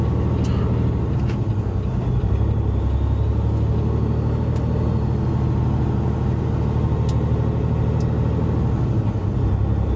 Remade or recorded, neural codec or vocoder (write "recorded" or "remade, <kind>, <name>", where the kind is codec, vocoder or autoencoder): recorded